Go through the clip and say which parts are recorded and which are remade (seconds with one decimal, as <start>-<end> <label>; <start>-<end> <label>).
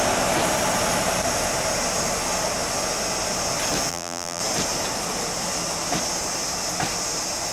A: 0.0-3.9 recorded; 3.9-4.4 remade; 4.4-7.5 recorded